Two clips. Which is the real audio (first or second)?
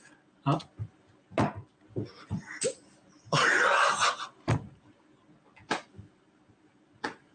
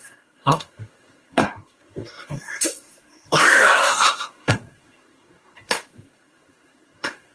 first